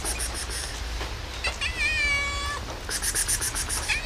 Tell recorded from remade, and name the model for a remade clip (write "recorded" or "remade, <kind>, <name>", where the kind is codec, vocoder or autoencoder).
recorded